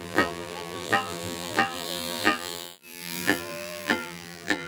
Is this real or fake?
fake